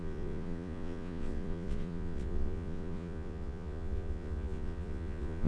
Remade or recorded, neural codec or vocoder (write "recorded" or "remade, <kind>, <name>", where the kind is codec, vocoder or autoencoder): remade, vocoder, Vocos